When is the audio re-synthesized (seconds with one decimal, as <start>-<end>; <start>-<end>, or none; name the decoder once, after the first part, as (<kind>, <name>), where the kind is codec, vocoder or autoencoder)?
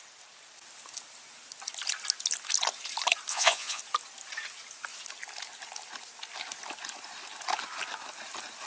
3.3-3.8 (vocoder, Vocos)